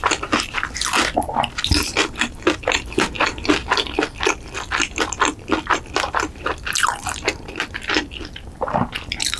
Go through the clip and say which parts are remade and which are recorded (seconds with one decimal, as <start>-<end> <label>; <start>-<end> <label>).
0.0-3.6 recorded; 3.6-8.5 remade; 8.5-9.4 recorded